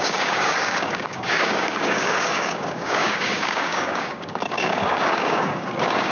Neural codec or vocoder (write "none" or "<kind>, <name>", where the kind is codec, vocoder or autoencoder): codec, DAC